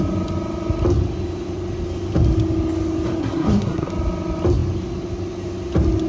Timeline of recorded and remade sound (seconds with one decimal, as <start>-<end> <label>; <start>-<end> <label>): 0.0-3.2 recorded; 3.2-3.9 remade; 3.9-6.1 recorded